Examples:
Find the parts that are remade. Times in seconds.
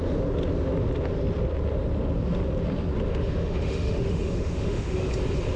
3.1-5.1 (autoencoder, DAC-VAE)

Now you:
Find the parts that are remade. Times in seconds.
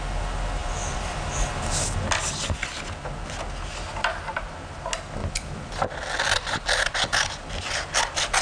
0.6-1.3 (vocoder, BigVGAN v2); 5.2-7.5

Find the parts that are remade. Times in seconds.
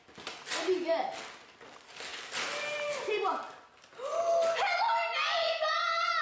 none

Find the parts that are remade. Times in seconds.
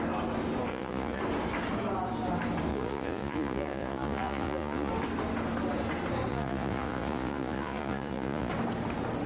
0.7-1.2 (vocoder, Vocos); 2.7-4.9; 6.3-8.5